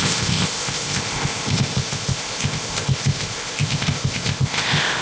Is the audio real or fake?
fake